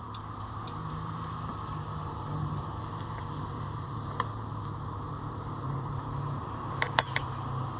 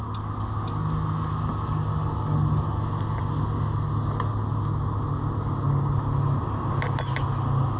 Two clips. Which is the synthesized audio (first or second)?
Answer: first